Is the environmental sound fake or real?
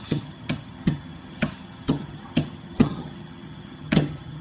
fake